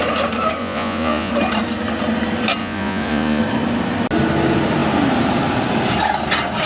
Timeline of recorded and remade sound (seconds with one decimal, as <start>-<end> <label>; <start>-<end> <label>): 0.0-0.6 recorded; 0.6-1.3 remade; 1.3-2.6 recorded; 2.6-3.4 remade; 3.4-6.7 recorded